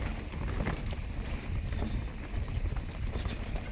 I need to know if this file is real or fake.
real